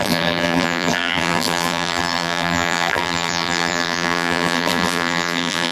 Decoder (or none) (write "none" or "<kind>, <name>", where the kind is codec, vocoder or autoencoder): vocoder, BigVGAN v2